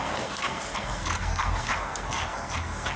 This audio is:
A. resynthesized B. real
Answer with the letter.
A